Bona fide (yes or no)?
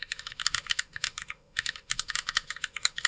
no